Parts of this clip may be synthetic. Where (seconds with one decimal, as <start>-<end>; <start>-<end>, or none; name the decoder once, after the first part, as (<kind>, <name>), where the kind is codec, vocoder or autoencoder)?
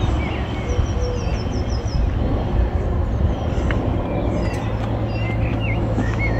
5.5-6.4 (autoencoder, DAC-VAE)